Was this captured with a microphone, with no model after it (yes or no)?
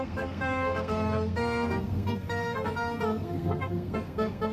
no